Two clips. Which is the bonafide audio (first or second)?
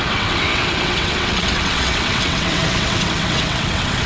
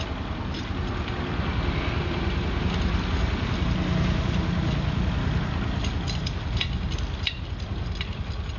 second